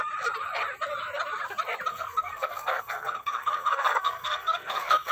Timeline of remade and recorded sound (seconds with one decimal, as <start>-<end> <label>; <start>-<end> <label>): 0.0-1.9 recorded; 1.9-5.1 remade